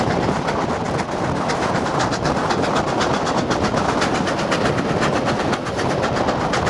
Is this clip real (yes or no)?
yes